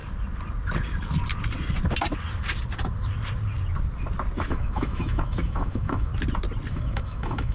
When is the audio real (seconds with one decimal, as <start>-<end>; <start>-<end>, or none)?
0.0-4.5; 6.1-6.7

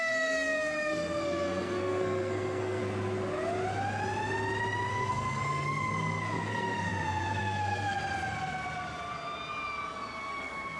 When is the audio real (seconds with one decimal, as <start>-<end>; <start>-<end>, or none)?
2.8-4.9; 8.0-10.3

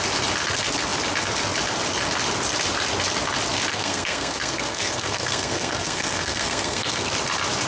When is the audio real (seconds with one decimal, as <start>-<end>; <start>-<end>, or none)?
0.0-3.7; 7.1-7.7

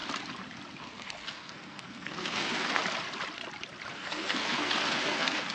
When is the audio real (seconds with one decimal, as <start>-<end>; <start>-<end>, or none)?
0.0-0.8; 2.8-3.9